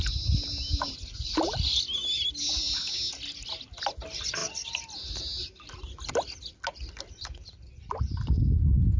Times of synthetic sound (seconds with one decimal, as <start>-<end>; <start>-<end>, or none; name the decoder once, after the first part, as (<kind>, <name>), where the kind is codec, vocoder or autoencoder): none